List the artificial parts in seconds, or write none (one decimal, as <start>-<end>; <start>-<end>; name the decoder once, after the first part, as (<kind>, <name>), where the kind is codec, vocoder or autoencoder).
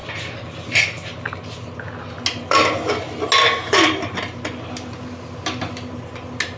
none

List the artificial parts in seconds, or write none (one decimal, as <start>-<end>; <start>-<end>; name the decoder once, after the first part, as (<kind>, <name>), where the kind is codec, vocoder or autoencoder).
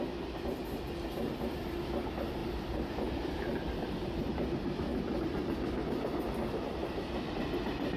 2.4-4.3 (vocoder, BigVGAN v2); 4.9-5.8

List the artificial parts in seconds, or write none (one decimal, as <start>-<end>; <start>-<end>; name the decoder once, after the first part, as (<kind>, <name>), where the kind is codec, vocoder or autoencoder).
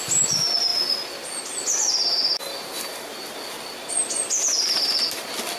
none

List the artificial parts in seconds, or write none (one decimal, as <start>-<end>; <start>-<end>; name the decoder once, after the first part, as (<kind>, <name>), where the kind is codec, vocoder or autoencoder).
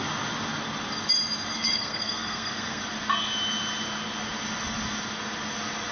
1.5-2.8 (codec, SNAC)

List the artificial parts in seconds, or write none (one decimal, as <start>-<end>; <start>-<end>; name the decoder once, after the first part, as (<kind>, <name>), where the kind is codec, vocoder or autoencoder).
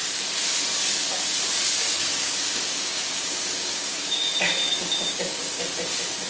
0.0-0.5 (codec, DAC); 1.9-5.7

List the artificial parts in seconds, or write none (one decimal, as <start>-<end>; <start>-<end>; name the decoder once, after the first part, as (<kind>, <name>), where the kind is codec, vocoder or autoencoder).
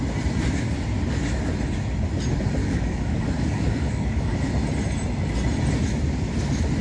2.6-4.5 (codec, DAC)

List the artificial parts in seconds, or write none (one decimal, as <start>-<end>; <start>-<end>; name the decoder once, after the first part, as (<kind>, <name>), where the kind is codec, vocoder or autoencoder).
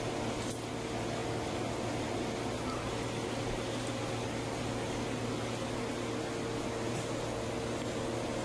none